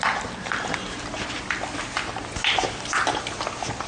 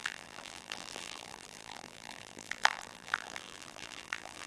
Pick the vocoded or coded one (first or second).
second